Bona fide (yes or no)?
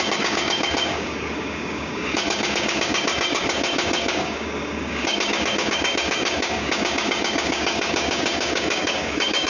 no